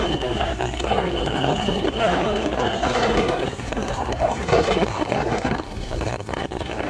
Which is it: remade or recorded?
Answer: remade